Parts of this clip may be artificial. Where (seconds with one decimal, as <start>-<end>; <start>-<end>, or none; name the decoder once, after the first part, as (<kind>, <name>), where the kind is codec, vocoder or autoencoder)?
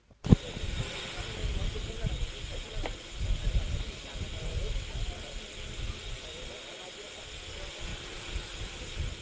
7.9-9.2 (vocoder, BigVGAN v2)